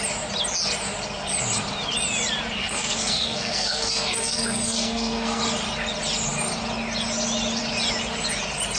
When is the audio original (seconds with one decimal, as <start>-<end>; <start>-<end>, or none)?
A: 0.0-2.6; 5.4-8.8

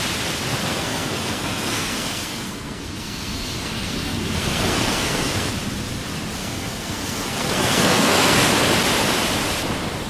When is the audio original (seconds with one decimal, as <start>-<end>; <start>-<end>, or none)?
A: 0.0-0.6; 5.5-6.4; 8.5-10.1

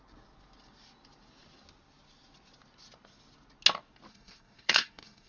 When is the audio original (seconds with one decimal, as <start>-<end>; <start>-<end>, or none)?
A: 0.0-4.1

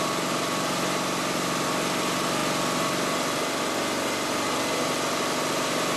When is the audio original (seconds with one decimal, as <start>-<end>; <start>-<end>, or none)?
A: 0.0-6.0

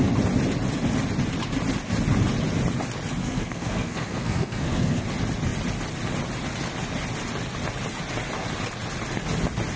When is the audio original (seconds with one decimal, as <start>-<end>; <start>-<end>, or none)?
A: 0.0-3.2; 5.0-9.8

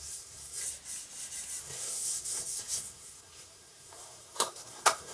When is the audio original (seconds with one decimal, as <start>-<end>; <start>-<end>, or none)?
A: 0.6-1.6